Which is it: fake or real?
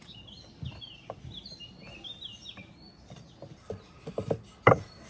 real